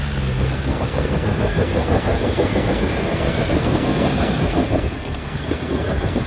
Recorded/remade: remade